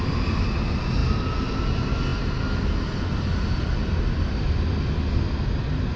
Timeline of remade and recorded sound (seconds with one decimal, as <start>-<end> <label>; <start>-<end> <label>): 0.0-6.0 recorded